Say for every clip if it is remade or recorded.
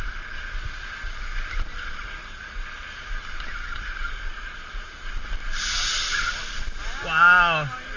recorded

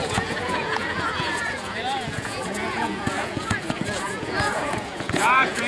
remade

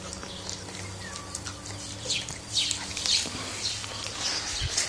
recorded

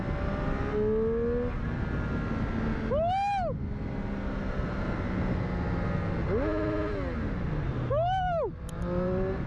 recorded